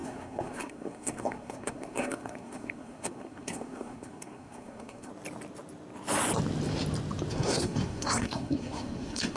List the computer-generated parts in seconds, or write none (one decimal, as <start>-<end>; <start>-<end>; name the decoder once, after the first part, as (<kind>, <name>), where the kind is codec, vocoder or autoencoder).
0.0-5.1 (codec, SNAC); 7.3-9.4